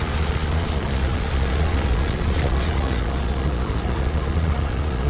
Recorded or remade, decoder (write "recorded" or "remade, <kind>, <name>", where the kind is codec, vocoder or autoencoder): remade, vocoder, Vocos